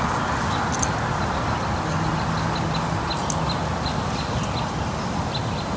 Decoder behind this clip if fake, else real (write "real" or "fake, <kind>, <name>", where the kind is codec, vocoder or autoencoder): real